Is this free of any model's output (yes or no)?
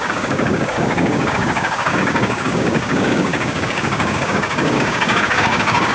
no